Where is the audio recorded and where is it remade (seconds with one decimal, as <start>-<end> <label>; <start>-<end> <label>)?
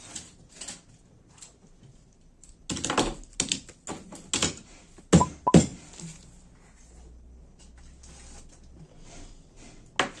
0.0-4.4 recorded; 4.4-5.0 remade; 5.0-10.2 recorded